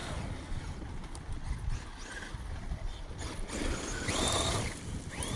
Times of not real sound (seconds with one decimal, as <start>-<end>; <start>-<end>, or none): none